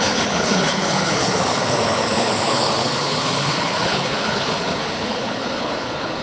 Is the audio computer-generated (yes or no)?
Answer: yes